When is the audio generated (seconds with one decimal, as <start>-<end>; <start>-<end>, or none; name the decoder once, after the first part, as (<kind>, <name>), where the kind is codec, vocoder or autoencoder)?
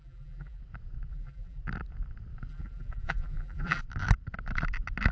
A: 0.0-0.6 (vocoder, BigVGAN v2); 1.1-1.6; 2.5-3.8